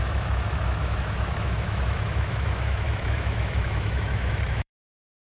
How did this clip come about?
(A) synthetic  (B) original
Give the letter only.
A